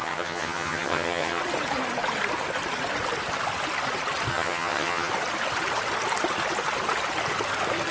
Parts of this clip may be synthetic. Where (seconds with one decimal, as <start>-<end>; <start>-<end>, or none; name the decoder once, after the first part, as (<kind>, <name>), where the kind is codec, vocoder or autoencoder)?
0.0-1.4 (vocoder, HiFi-GAN); 4.3-5.1